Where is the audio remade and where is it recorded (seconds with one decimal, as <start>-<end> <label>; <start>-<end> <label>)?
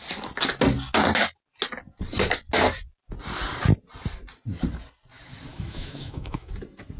0.0-5.5 recorded; 5.5-6.5 remade; 6.5-7.0 recorded